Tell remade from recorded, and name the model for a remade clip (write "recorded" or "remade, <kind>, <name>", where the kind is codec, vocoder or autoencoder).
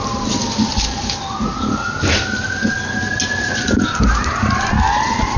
recorded